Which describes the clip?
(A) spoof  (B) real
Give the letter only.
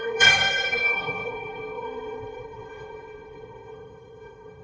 A